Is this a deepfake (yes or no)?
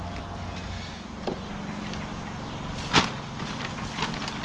no